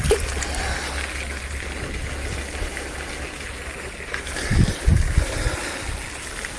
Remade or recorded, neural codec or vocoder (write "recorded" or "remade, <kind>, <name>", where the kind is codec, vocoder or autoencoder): recorded